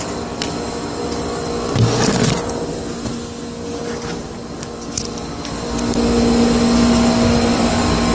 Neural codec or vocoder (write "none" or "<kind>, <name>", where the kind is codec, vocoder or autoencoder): vocoder, BigVGAN v2